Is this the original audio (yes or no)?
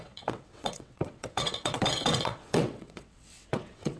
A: no